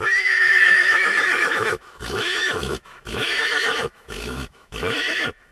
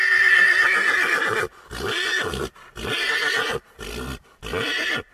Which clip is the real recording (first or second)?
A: second